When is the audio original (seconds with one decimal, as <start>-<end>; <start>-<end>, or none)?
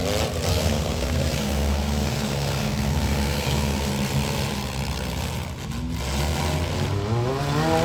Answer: 0.0-0.5; 3.9-7.8